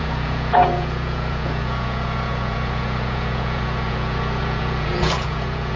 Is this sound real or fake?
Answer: fake